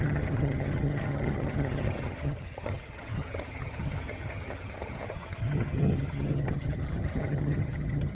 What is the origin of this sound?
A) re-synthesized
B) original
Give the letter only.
A